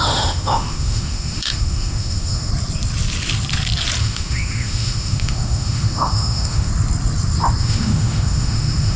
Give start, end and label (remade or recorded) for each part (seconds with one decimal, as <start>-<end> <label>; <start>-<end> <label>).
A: 0.0-2.5 remade; 2.5-4.0 recorded; 4.0-6.7 remade; 6.7-7.6 recorded; 7.6-9.0 remade